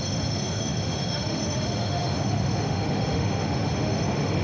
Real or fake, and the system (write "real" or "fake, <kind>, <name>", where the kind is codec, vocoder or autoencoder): fake, autoencoder, DAC-VAE